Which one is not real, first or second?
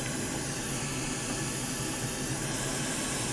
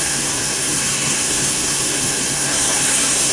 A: second